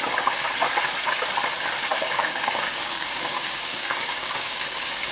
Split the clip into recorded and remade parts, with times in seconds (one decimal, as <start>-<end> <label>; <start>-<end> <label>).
0.0-1.9 recorded; 1.9-5.1 remade